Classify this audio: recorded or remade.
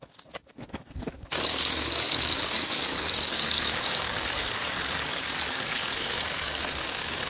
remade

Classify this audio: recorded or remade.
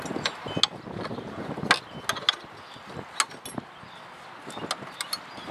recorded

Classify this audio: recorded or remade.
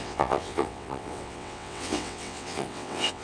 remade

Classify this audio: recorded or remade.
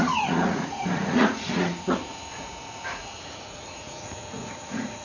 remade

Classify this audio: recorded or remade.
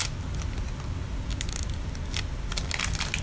recorded